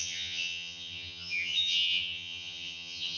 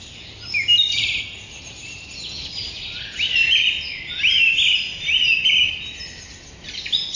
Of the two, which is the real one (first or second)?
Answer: second